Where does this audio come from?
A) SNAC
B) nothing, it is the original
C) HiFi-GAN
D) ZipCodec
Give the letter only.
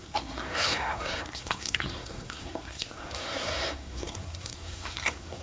A